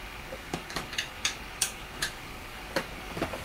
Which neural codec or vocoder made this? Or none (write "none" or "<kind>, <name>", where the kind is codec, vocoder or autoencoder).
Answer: codec, DAC